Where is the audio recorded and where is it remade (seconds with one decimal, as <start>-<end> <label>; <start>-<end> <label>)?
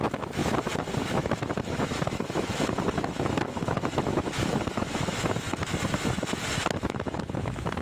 0.0-0.4 remade; 0.4-1.0 recorded; 1.0-7.8 remade